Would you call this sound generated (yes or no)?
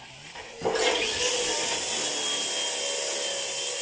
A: no